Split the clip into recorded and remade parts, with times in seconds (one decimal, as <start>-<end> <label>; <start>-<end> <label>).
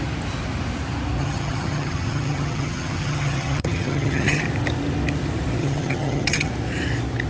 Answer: 0.0-1.2 recorded; 1.2-4.4 remade; 4.4-5.6 recorded; 5.6-6.5 remade; 6.5-7.3 recorded